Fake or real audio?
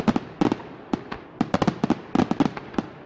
real